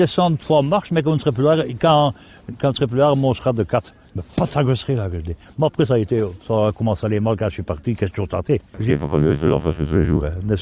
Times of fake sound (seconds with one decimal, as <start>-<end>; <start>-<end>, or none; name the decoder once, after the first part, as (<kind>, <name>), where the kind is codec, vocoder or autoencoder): 8.9-10.2 (vocoder, Vocos)